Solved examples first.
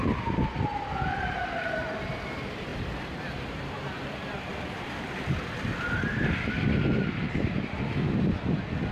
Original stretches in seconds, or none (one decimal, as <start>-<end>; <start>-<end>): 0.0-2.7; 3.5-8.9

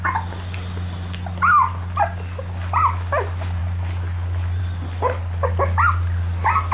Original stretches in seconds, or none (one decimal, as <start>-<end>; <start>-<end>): 0.0-6.7

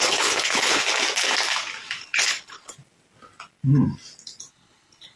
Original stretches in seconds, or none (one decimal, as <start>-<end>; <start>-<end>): 0.8-2.0; 2.7-4.5

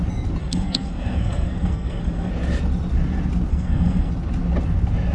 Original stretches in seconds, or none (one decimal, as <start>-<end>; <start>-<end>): 0.0-0.4; 2.3-3.5; 4.1-5.1

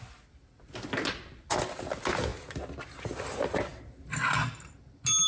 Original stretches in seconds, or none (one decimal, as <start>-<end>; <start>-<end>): 0.0-5.3

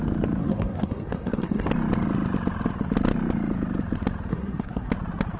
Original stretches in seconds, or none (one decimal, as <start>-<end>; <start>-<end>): 0.0-0.4; 1.7-4.3; 4.9-5.4

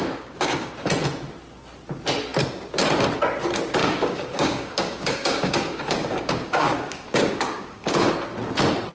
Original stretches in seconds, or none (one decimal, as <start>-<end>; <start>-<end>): 0.7-3.8; 8.1-8.9

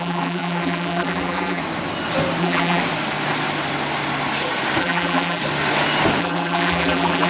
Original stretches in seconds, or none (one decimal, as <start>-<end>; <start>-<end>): 1.6-2.4; 2.8-4.8; 5.4-6.2